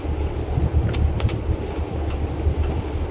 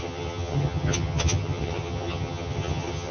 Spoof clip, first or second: second